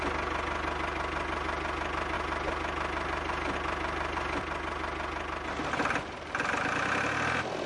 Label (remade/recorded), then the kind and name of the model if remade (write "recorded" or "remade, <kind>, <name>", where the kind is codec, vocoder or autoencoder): recorded